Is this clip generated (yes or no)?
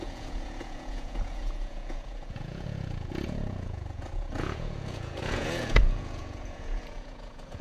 yes